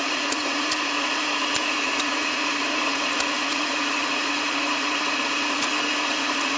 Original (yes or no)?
no